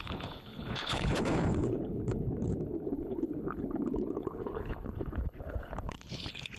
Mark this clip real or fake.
fake